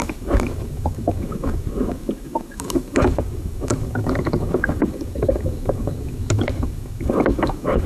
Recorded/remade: remade